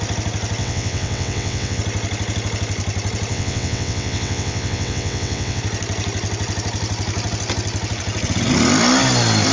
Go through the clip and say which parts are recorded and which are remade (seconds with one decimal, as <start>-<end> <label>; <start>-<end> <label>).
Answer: 0.0-0.6 recorded; 0.6-1.8 remade; 1.8-3.3 recorded; 3.3-5.6 remade; 5.6-9.5 recorded